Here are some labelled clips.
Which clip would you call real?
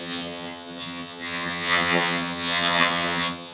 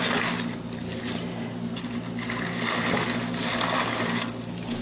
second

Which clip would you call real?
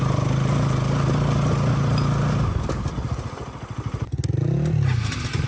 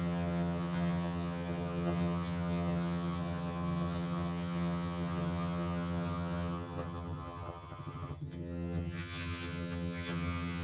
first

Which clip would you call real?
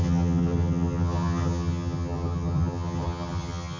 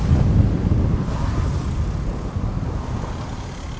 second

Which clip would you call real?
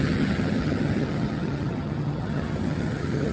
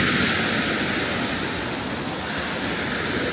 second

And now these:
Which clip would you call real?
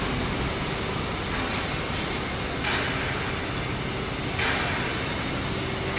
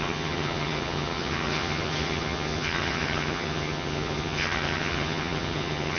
first